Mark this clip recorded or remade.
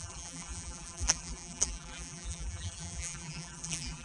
remade